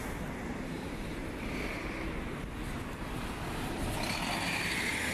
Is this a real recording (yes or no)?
yes